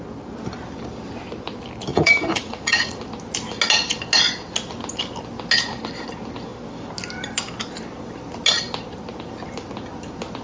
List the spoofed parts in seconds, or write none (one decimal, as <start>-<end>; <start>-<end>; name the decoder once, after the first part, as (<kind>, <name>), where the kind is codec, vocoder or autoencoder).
1.9-3.0 (vocoder, Vocos)